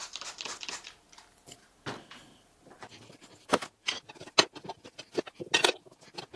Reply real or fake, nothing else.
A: real